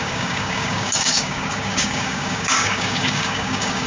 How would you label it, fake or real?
fake